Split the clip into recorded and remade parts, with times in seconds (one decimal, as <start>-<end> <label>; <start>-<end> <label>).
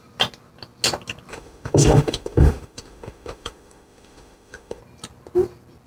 0.0-1.3 recorded; 1.3-4.8 remade; 4.8-5.9 recorded